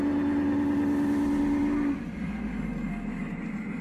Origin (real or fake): real